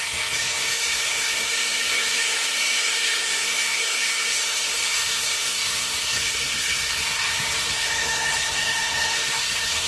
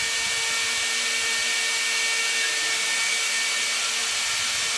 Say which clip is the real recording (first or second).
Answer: second